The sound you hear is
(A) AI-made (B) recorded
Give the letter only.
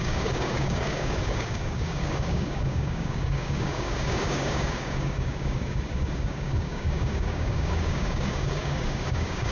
A